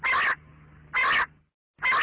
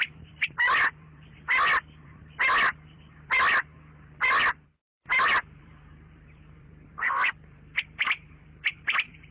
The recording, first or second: first